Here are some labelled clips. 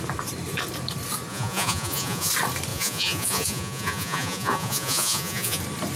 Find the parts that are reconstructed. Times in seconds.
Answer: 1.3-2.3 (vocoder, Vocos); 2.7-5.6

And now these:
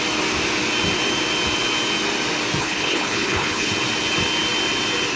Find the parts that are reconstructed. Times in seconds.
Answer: 2.6-3.7 (codec, HILCodec)

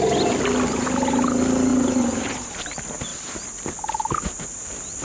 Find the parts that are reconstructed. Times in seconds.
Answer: 1.7-2.6 (vocoder, BigVGAN v2); 3.1-3.7